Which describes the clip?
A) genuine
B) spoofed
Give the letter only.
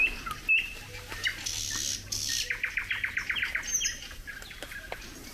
A